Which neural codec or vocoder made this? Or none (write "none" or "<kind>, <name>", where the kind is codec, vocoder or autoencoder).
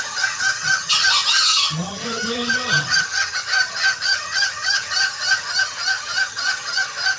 vocoder, HiFi-GAN